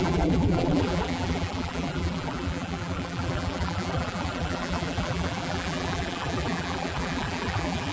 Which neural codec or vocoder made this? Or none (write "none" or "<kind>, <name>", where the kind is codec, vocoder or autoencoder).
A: vocoder, BigVGAN v2